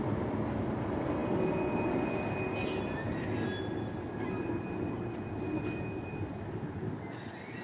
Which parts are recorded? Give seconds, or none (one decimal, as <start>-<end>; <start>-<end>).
0.0-7.6